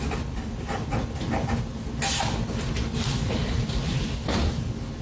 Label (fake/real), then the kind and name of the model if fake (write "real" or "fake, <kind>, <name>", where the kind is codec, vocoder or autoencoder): real